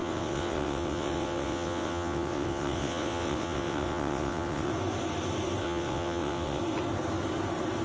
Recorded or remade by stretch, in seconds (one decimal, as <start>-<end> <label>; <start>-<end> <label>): 0.0-4.7 remade; 4.7-5.6 recorded; 5.6-6.6 remade; 6.6-7.8 recorded